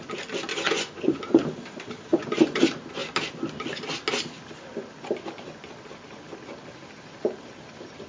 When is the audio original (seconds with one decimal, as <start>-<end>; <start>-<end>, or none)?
0.0-0.5; 1.2-2.1; 2.6-8.1